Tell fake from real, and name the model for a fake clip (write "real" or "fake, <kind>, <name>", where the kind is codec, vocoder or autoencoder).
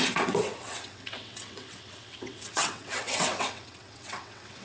fake, vocoder, WaveNeXt